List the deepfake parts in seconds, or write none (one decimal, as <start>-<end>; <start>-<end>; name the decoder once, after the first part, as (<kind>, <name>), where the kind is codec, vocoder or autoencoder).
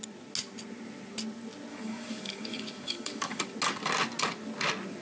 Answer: 1.7-3.4 (codec, DAC)